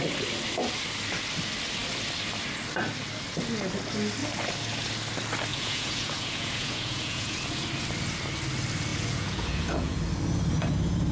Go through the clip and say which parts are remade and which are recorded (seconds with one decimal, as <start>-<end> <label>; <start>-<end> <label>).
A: 0.0-5.5 recorded; 5.5-7.7 remade; 7.7-8.9 recorded; 8.9-10.0 remade; 10.0-11.1 recorded